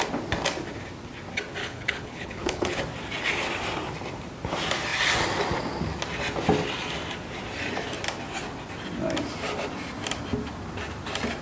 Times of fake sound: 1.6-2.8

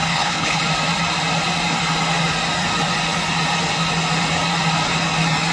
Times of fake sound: 0.0-0.6

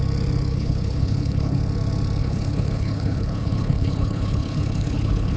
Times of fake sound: 0.5-1.6; 2.2-5.4

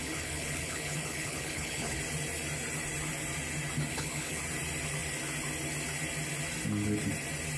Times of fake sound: 0.0-2.0; 3.9-4.4

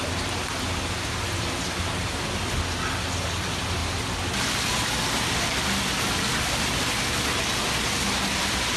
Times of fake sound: none

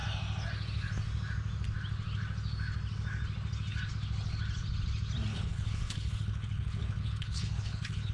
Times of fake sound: 5.3-8.1

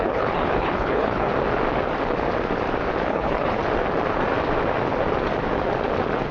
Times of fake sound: 0.0-1.3; 3.1-3.6